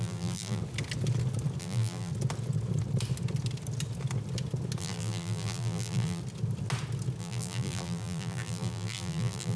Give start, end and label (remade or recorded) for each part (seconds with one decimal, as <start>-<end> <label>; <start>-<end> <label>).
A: 0.0-0.6 remade; 0.6-1.6 recorded; 1.6-2.1 remade; 2.1-4.8 recorded; 4.8-6.2 remade; 6.2-7.2 recorded; 7.2-9.6 remade